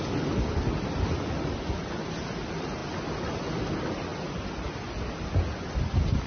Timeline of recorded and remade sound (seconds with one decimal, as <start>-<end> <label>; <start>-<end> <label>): 0.0-6.3 recorded